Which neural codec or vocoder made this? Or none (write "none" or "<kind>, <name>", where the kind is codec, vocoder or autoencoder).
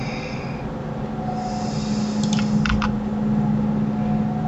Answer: none